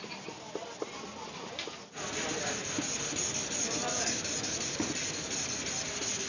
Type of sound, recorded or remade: recorded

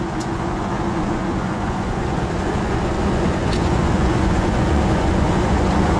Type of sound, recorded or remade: remade